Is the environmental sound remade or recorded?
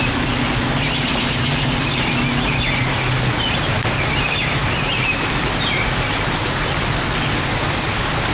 recorded